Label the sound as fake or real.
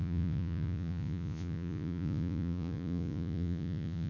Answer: fake